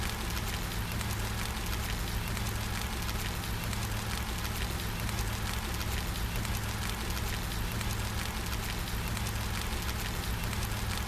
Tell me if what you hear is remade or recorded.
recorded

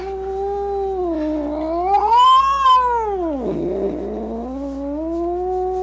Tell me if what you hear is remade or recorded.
recorded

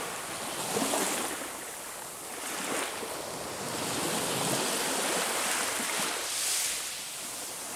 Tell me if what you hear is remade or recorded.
recorded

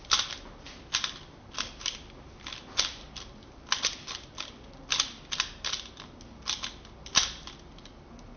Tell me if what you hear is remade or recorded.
recorded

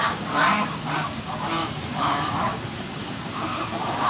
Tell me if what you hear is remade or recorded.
remade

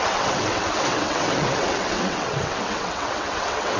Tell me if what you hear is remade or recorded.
remade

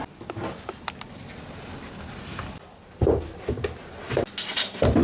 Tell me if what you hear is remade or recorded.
recorded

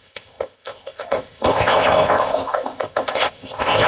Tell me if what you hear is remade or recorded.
remade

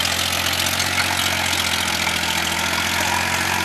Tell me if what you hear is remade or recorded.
recorded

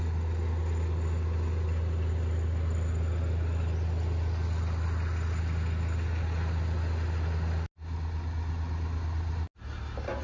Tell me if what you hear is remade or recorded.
recorded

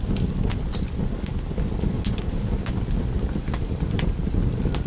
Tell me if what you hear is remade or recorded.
recorded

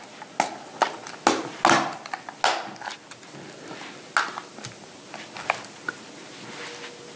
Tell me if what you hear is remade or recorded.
recorded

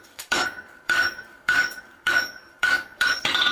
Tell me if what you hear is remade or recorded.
remade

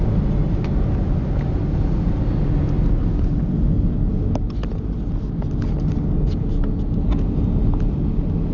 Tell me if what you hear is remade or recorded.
recorded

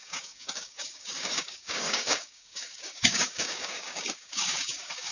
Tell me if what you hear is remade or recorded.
remade